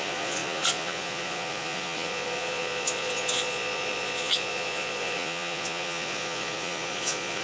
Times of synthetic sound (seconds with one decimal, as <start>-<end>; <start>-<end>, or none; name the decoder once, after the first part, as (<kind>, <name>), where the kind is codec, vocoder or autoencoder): 0.0-7.4 (vocoder, Vocos)